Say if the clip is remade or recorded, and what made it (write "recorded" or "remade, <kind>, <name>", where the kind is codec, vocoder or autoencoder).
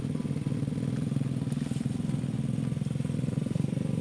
recorded